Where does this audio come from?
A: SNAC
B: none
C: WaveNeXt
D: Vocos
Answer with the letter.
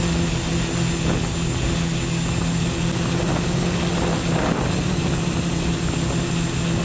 B